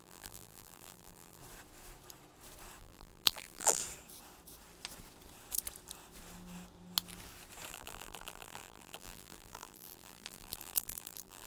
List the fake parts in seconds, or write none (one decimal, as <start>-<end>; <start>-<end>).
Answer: 0.0-1.4; 2.8-3.8; 7.7-11.5